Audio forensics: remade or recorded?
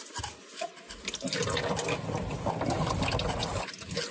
recorded